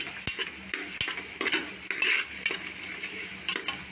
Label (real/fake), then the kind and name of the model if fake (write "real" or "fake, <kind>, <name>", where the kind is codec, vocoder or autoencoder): real